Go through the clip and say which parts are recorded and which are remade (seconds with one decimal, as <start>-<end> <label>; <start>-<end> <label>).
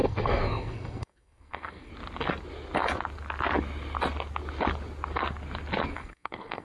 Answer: 0.0-1.9 remade; 1.9-5.9 recorded; 5.9-6.6 remade